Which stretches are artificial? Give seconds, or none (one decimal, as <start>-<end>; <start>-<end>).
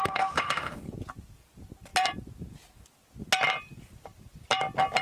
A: 0.0-0.8